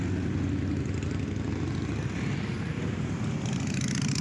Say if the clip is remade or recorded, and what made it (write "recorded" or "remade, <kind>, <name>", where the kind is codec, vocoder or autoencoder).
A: recorded